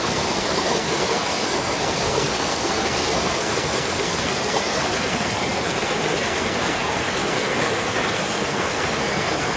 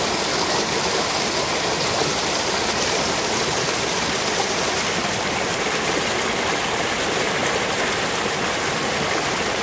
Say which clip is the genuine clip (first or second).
second